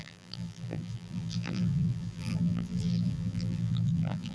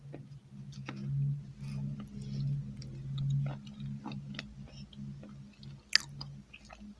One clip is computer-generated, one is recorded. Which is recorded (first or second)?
second